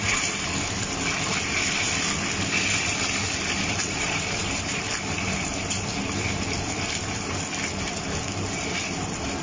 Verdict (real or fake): fake